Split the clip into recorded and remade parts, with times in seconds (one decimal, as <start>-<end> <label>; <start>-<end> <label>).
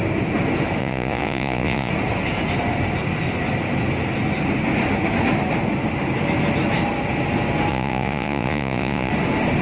0.0-0.8 recorded; 0.8-1.9 remade; 1.9-7.7 recorded; 7.7-9.1 remade; 9.1-9.6 recorded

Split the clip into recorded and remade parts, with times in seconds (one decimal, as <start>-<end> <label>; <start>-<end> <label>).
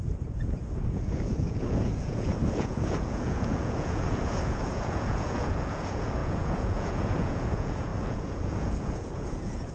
0.0-9.7 remade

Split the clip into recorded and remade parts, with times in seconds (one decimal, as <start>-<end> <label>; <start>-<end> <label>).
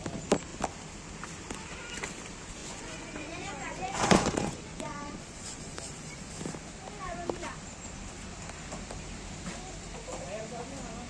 0.0-2.6 recorded; 2.6-6.3 remade; 6.3-11.1 recorded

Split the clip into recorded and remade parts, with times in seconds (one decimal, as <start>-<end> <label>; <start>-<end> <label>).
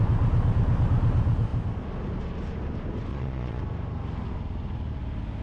0.0-3.1 recorded; 3.1-3.6 remade; 3.6-5.4 recorded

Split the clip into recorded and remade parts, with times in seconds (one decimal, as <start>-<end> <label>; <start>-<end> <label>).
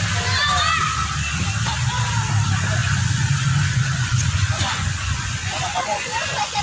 0.0-2.8 recorded; 2.8-6.6 remade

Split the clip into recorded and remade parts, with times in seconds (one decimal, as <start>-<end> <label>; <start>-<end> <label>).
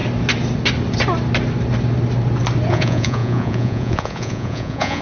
0.0-2.7 recorded; 2.7-5.0 remade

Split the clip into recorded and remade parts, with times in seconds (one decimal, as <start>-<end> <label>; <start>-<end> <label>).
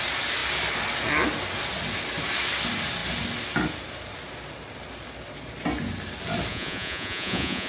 0.0-6.5 recorded; 6.5-7.7 remade